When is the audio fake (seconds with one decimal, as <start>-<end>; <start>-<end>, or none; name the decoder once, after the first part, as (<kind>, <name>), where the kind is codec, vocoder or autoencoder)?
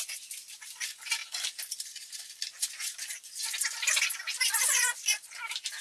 none